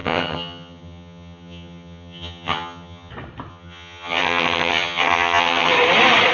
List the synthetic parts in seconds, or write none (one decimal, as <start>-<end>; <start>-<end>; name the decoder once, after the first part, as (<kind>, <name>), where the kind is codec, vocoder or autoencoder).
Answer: 0.0-3.1 (vocoder, HiFi-GAN); 3.5-5.7